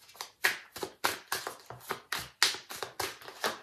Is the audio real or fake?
real